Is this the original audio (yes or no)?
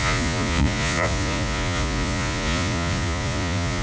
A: no